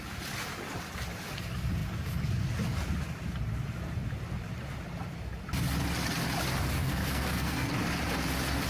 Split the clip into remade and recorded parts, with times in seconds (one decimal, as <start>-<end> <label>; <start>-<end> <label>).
0.0-6.8 recorded; 6.8-7.7 remade; 7.7-8.7 recorded